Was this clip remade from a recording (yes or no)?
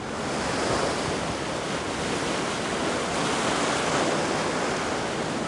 no